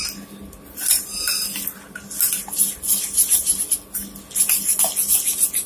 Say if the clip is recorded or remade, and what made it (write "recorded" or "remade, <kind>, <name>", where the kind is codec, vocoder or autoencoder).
recorded